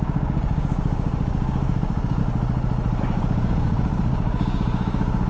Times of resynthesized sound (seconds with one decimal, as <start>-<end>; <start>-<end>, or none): 0.0-2.2; 3.0-5.3